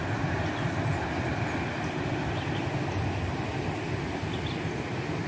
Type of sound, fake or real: real